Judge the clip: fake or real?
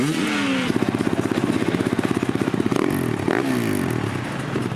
real